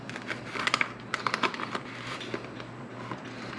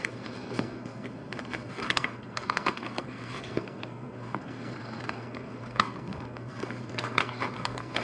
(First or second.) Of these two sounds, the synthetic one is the second